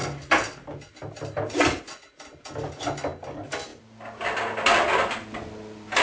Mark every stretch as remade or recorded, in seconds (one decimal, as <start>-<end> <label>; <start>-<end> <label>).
0.0-6.0 recorded